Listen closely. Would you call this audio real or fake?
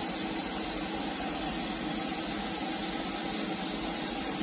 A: real